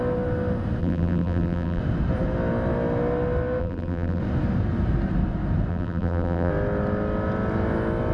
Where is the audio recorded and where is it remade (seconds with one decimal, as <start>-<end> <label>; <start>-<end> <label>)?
0.0-0.8 recorded; 0.8-1.8 remade; 1.8-3.6 recorded; 3.6-4.2 remade; 4.2-5.7 recorded; 5.7-6.5 remade; 6.5-8.1 recorded